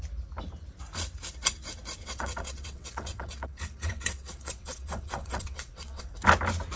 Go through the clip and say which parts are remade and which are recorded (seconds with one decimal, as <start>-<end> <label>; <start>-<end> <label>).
0.0-2.0 recorded; 2.0-6.1 remade; 6.1-6.8 recorded